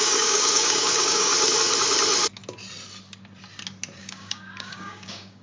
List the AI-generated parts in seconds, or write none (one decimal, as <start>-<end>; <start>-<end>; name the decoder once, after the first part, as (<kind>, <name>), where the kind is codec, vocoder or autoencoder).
0.0-1.3 (codec, DAC); 4.0-5.4

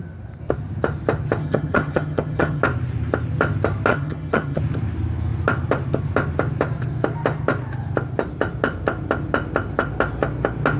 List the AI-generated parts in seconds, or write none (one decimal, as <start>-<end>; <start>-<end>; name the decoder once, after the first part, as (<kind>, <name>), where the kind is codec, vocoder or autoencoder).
1.4-2.6 (vocoder, HiFi-GAN); 3.9-4.6

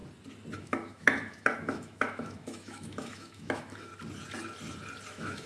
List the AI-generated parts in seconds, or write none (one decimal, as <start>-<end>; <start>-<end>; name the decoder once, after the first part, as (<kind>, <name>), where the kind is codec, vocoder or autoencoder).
0.6-3.9 (autoencoder, DAC-VAE); 5.1-5.5

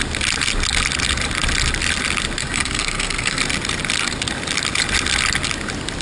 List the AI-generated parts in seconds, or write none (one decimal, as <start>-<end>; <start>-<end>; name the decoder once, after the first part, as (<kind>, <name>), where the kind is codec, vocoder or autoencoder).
2.4-3.4 (codec, SNAC)

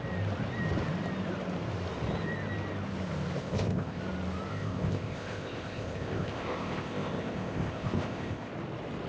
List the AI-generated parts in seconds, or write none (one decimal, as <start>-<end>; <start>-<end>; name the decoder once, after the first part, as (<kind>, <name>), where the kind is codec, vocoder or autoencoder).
3.4-4.0 (codec, ZipCodec); 4.5-8.5

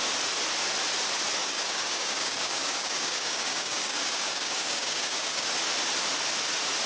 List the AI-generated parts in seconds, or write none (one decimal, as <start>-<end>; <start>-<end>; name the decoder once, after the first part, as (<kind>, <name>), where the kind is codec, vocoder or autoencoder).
1.4-5.5 (codec, DAC)

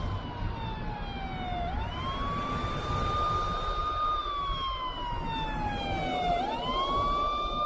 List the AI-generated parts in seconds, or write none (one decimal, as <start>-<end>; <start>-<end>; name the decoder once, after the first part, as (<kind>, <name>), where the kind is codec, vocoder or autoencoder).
none

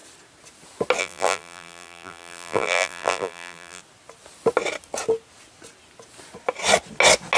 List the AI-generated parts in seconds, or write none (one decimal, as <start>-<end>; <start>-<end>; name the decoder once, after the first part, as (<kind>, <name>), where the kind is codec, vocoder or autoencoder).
1.0-3.8 (vocoder, BigVGAN v2)